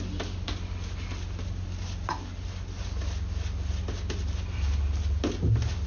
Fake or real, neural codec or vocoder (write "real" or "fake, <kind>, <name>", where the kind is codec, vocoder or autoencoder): real